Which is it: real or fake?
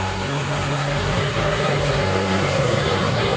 fake